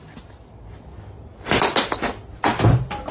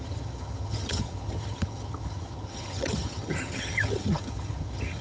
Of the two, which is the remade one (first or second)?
second